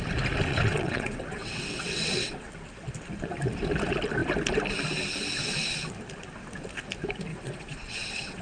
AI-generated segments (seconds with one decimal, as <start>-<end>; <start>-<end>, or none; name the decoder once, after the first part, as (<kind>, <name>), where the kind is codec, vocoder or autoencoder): 0.5-2.5 (vocoder, WaveNeXt); 7.3-8.4

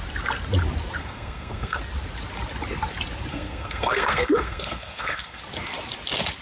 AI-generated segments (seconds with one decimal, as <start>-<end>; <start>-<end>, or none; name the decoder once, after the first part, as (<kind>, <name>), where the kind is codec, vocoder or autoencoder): 1.0-1.8 (codec, SNAC); 3.3-5.4

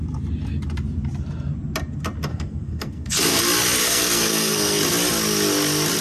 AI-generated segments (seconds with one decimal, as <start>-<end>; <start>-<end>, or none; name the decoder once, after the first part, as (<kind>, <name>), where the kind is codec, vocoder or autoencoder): 2.3-3.4 (codec, SNAC); 3.8-4.8

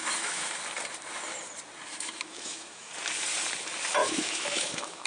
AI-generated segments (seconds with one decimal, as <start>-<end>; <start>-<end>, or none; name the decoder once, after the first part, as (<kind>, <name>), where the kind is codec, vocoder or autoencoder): 0.0-0.6 (autoencoder, DAC-VAE); 1.9-2.9; 4.0-5.1

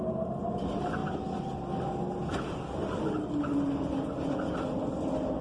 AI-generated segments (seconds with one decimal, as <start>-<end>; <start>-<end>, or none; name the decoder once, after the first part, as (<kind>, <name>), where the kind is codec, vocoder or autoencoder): none

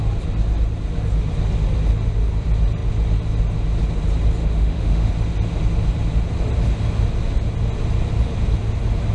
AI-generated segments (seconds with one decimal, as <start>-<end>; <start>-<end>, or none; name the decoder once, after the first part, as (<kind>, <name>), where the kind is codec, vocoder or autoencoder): 4.4-5.1 (autoencoder, DAC-VAE)

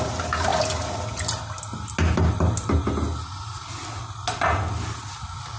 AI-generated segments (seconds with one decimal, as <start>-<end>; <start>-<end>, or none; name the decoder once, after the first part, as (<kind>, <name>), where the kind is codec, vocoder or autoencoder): none

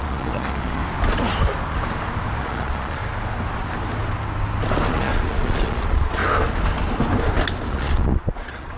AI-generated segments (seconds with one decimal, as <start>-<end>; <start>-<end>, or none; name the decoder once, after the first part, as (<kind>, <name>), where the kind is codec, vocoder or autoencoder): 0.0-0.8 (vocoder, Vocos); 2.4-3.0; 4.9-6.2; 7.7-8.8